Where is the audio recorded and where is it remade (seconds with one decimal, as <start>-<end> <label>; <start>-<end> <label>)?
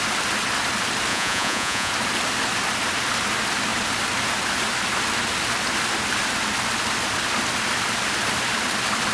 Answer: 0.0-1.1 recorded; 1.1-1.9 remade; 1.9-9.1 recorded